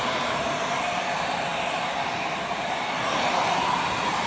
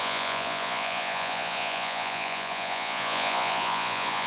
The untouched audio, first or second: first